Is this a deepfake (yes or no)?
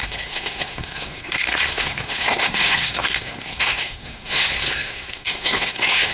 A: yes